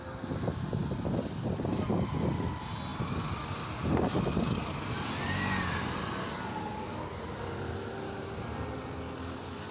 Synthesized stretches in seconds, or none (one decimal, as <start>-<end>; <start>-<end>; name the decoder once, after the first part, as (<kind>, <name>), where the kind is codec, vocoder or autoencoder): none